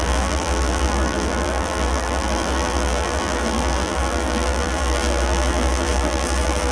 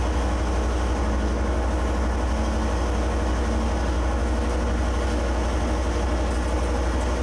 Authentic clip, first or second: second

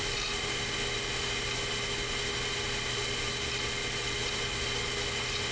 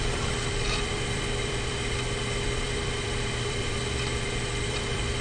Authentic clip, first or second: first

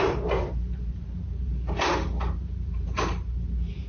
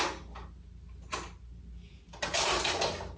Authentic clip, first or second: second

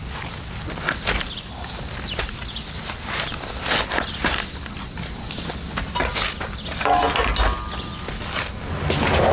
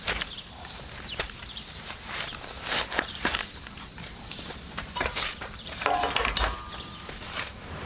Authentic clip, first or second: first